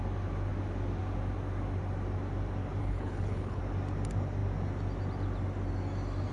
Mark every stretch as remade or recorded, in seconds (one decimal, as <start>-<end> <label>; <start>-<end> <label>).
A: 0.0-2.8 recorded; 2.8-3.6 remade; 3.6-6.3 recorded